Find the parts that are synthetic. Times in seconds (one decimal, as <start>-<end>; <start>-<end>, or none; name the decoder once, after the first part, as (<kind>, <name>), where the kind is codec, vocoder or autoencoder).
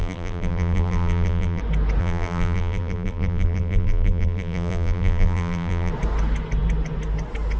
0.0-1.6 (vocoder, BigVGAN v2); 2.0-5.9